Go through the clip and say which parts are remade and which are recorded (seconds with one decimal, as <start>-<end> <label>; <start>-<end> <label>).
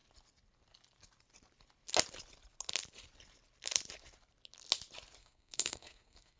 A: 0.0-5.2 recorded; 5.2-6.4 remade